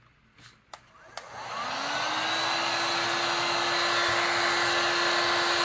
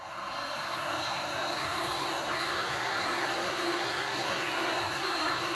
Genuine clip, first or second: first